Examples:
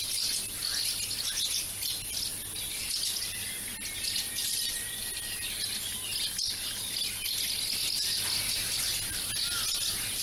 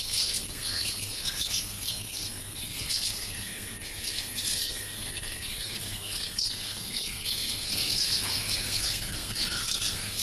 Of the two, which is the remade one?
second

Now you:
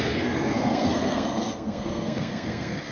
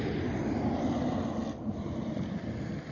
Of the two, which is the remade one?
first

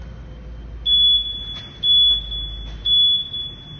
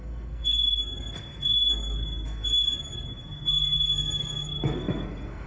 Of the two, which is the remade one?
second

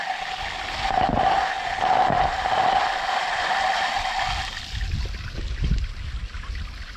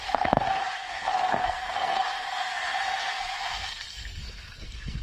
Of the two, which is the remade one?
second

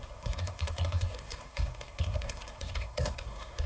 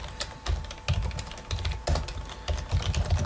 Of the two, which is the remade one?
first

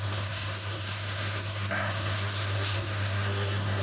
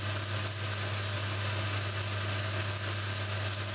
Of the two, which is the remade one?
first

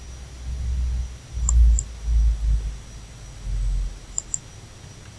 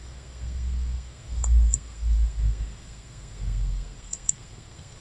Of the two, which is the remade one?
second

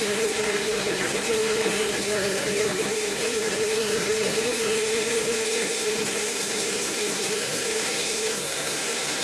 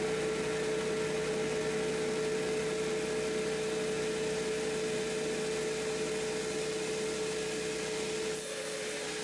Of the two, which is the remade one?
first